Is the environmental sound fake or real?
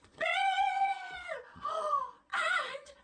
fake